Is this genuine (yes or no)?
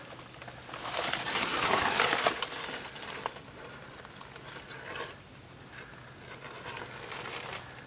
yes